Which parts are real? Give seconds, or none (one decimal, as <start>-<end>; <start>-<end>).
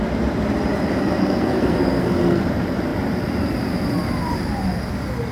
0.0-1.2; 2.4-5.3